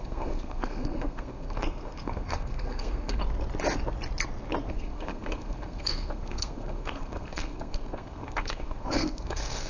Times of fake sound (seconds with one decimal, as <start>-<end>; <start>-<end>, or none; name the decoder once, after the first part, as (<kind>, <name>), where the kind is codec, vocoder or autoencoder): 0.0-3.2 (codec, SNAC); 4.7-9.7